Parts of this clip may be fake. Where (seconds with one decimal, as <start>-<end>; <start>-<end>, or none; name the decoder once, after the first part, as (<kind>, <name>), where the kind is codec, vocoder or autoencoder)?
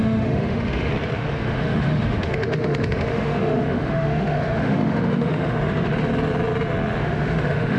0.0-0.9 (autoencoder, DAC-VAE); 1.4-5.9; 7.0-7.8